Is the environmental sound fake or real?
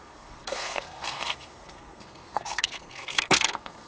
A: fake